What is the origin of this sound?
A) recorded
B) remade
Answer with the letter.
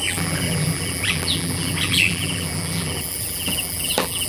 B